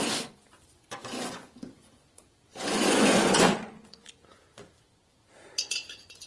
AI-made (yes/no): yes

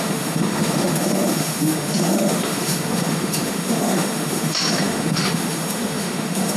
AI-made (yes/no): yes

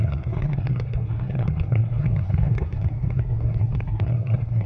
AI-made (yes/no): yes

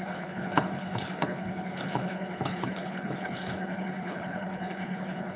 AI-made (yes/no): yes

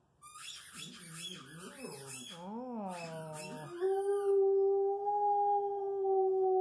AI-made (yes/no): no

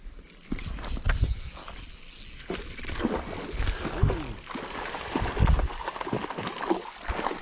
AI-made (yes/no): no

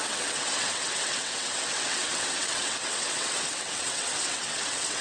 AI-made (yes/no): yes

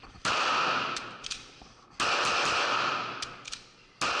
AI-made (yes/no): no